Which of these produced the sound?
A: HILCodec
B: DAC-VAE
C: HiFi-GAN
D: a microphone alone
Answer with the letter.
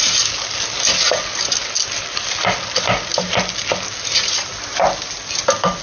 D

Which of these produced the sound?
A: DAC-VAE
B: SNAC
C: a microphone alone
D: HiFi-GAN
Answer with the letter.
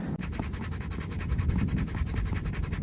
C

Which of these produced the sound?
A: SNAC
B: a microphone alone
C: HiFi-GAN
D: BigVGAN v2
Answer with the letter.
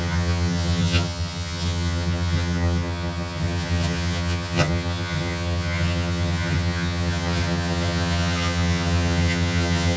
C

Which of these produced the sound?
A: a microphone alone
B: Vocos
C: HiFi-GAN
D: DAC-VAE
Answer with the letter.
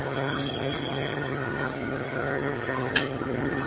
C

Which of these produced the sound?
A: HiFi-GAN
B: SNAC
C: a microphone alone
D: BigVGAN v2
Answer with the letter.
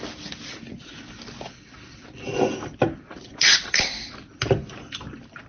C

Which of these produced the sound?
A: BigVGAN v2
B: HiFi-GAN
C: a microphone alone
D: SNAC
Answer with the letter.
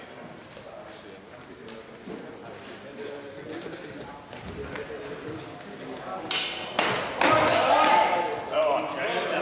C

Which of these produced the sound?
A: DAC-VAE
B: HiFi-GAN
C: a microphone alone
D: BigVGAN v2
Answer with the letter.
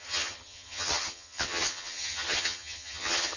B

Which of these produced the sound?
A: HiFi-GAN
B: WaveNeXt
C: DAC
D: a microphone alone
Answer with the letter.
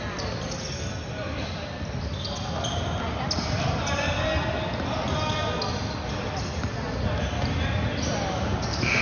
D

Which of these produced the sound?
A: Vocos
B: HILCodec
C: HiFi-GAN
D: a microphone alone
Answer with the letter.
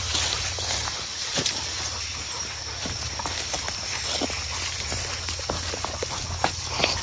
D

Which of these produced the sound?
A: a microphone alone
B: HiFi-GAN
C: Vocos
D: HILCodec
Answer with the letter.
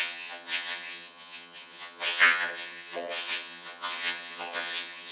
B